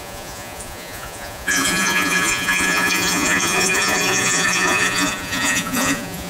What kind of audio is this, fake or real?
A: fake